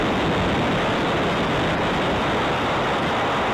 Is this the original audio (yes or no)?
yes